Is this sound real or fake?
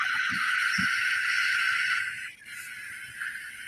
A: real